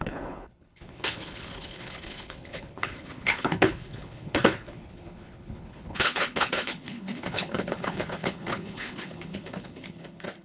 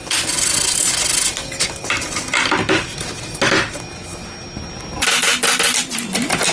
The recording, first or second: second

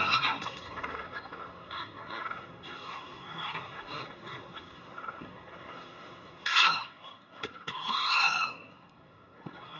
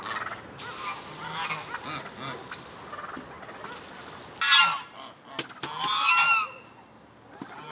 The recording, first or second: second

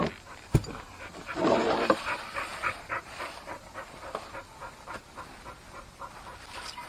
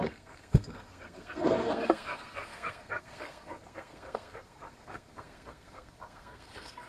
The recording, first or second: first